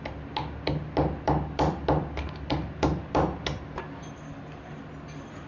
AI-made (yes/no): no